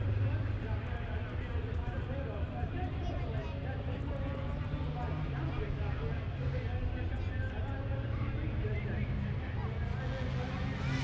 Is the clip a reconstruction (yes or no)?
no